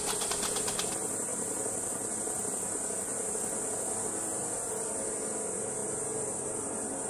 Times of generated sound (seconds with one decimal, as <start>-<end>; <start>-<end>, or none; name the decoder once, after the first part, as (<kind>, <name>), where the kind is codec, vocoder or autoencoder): 4.4-4.9 (vocoder, BigVGAN v2); 5.8-7.1